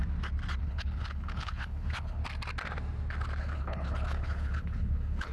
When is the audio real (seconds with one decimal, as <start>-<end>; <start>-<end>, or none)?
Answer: 0.0-0.6; 2.2-3.4